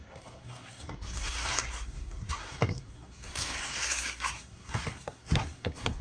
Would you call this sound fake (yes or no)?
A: yes